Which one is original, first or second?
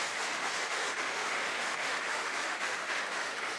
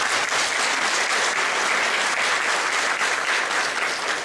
second